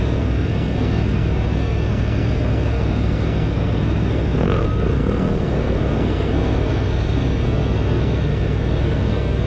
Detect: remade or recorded remade